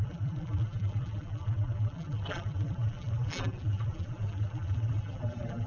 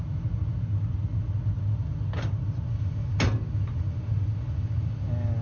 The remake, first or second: first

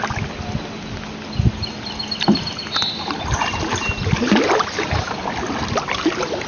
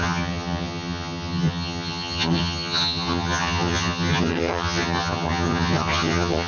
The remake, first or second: second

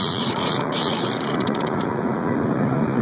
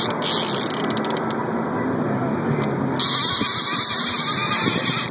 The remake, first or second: first